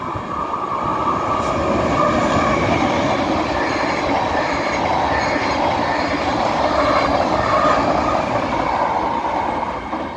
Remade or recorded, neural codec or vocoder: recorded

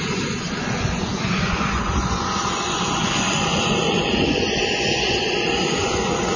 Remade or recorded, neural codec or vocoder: remade, vocoder, Vocos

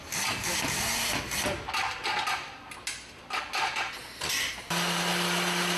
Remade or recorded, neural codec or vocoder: recorded